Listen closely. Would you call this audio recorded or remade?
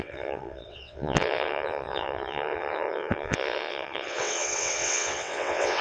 remade